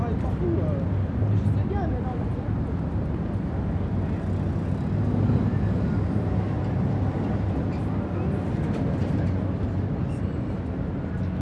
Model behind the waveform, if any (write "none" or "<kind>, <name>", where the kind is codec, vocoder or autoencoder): none